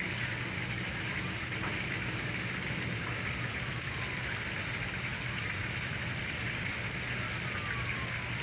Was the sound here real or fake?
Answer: real